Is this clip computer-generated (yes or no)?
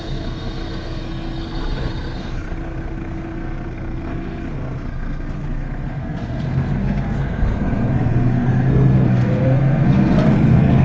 yes